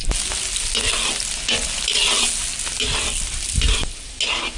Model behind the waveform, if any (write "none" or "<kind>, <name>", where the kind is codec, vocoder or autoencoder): none